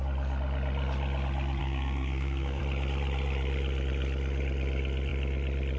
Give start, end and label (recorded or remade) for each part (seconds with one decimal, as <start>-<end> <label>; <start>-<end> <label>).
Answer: 0.0-1.6 recorded; 1.6-2.6 remade; 2.6-5.8 recorded